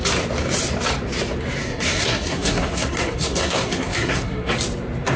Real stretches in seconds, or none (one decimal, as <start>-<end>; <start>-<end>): 0.0-1.6; 4.5-5.2